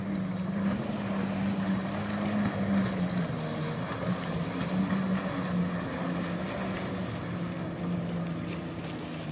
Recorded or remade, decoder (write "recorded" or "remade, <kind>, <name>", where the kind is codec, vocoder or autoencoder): recorded